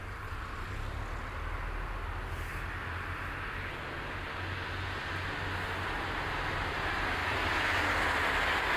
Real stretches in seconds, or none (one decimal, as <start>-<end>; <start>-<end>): 0.0-7.2; 7.7-8.8